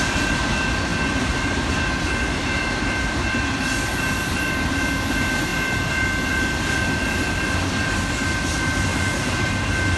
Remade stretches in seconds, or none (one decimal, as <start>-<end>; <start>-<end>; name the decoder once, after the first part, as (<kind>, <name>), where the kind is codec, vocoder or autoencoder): 8.9-9.5 (vocoder, BigVGAN v2)